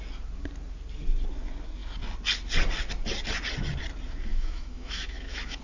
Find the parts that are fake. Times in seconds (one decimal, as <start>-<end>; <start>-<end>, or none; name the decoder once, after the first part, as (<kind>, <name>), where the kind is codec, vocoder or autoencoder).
4.3-5.6 (autoencoder, DAC-VAE)